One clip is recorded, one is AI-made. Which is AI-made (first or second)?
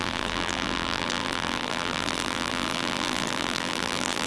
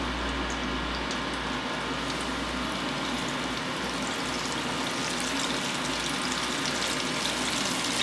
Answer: first